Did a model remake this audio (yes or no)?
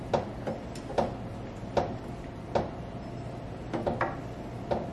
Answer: no